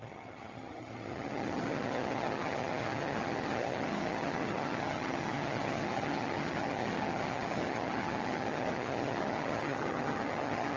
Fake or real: fake